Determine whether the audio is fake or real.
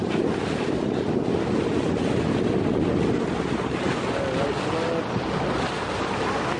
real